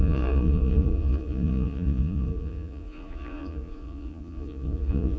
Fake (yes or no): yes